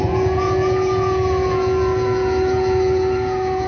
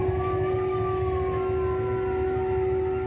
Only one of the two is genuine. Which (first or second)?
second